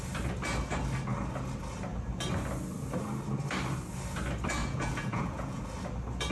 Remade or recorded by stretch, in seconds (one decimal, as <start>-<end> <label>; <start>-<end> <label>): 0.0-4.6 recorded; 4.6-5.6 remade; 5.6-6.3 recorded